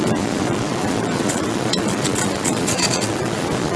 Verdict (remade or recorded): remade